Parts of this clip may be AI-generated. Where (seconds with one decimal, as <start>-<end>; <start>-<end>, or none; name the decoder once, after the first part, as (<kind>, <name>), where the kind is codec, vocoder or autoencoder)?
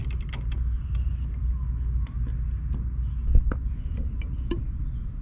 3.6-4.6 (vocoder, BigVGAN v2)